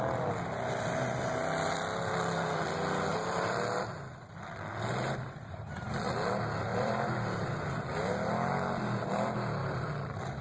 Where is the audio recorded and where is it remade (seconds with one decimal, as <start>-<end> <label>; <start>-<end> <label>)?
0.0-3.1 recorded; 3.1-3.9 remade; 3.9-6.7 recorded; 6.7-8.1 remade; 8.1-9.6 recorded; 9.6-10.4 remade